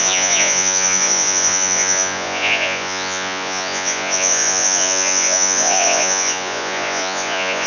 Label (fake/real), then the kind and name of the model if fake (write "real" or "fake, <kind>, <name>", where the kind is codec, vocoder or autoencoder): fake, vocoder, Vocos